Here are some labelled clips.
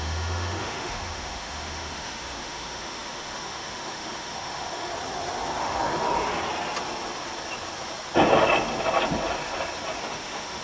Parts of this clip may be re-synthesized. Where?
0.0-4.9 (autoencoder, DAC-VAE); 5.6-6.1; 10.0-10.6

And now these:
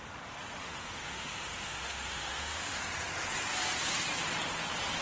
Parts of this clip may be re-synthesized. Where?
0.6-2.8 (autoencoder, DAC-VAE)